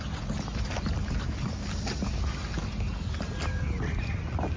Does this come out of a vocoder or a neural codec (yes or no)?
no